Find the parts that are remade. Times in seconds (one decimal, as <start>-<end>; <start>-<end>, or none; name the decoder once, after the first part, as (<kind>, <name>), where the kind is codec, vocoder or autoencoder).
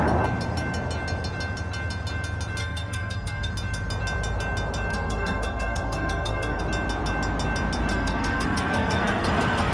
2.6-3.5 (codec, SNAC); 4.9-6.6; 7.9-9.7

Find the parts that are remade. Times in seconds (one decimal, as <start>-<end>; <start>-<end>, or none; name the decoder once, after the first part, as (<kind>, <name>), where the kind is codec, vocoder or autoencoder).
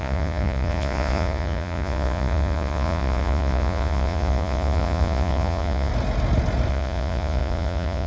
0.0-5.9 (vocoder, Vocos); 6.7-8.1